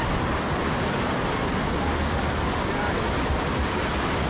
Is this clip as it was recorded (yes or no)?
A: yes